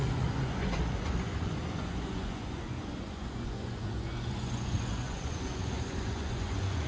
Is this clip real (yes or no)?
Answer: no